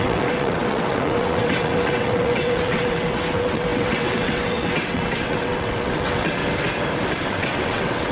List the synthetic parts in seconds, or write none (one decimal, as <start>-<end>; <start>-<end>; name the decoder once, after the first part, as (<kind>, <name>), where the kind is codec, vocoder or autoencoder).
0.0-6.4 (vocoder, WaveNeXt); 7.2-8.1